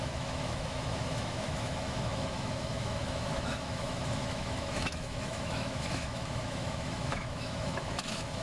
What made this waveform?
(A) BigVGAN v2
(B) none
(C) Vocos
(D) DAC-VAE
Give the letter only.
D